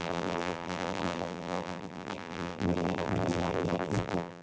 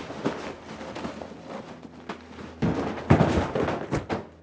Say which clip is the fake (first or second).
first